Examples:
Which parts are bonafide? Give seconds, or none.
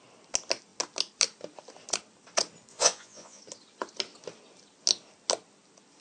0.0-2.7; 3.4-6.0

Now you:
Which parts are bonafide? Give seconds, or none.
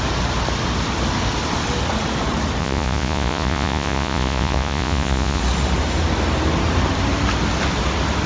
0.0-2.6; 5.4-8.3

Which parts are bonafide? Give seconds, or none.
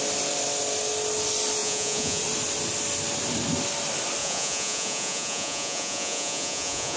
0.0-1.6; 2.2-4.2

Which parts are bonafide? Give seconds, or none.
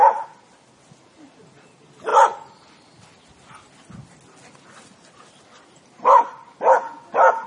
0.0-7.5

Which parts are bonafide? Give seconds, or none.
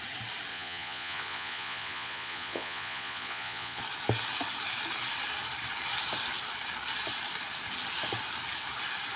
0.0-0.5; 3.8-9.2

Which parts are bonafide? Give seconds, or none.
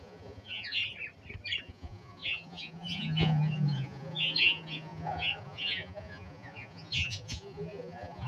0.8-1.6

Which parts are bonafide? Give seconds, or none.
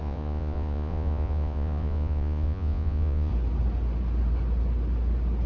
3.3-5.5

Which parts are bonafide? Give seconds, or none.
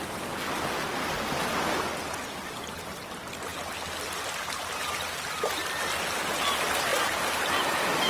0.0-8.1